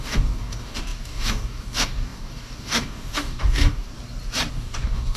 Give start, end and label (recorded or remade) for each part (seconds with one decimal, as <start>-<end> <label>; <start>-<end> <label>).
0.0-3.9 remade; 3.9-4.5 recorded; 4.5-5.2 remade